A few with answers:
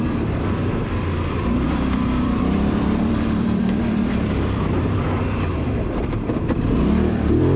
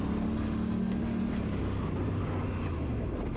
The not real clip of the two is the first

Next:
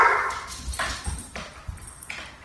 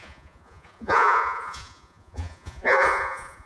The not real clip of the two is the second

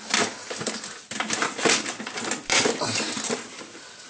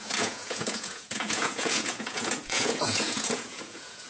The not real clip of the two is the second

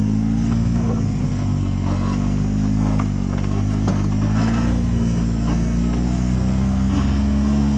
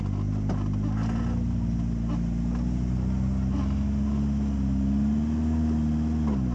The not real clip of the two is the first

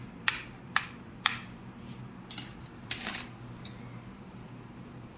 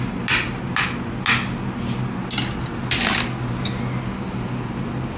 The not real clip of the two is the first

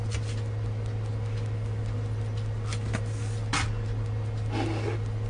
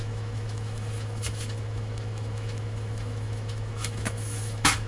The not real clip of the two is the second